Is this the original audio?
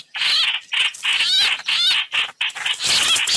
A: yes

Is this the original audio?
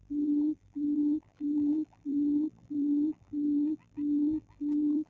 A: no